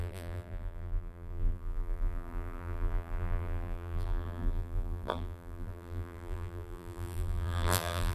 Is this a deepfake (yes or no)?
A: yes